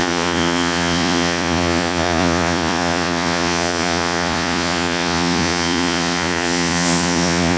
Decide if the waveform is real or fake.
fake